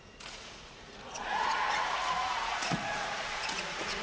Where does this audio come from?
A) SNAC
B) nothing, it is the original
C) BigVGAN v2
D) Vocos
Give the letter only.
D